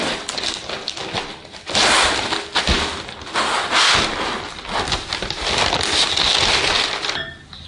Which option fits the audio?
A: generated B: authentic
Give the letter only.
B